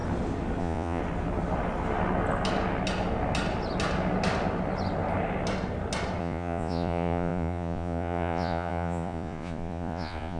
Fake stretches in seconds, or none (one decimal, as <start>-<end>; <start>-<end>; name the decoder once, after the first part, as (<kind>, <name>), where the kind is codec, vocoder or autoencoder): 0.6-1.0 (vocoder, Vocos); 6.2-10.4